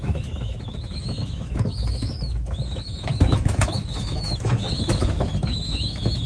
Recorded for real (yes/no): no